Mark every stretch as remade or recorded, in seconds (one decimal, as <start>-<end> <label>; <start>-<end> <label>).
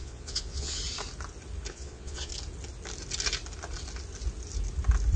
0.0-0.8 remade; 0.8-1.7 recorded; 1.7-2.3 remade; 2.3-5.2 recorded